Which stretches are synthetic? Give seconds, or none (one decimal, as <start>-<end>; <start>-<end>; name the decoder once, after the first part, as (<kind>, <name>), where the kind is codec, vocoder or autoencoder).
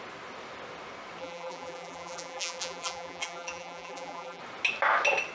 1.2-4.4 (vocoder, BigVGAN v2)